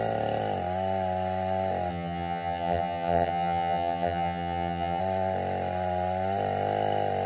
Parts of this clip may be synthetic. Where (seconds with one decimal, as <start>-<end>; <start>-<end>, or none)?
1.9-5.0